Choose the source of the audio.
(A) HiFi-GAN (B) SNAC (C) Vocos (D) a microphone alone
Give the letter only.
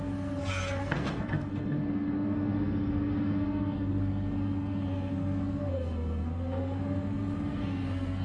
B